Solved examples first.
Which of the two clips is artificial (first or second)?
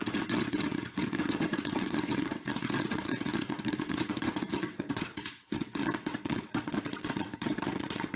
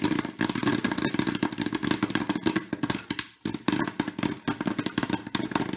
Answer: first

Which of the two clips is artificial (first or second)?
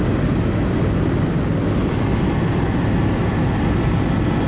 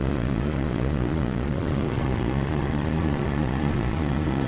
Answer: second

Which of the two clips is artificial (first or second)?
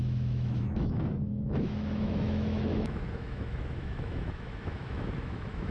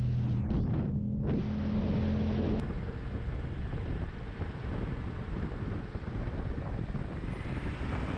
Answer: first